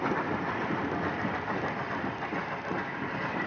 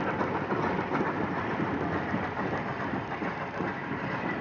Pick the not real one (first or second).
second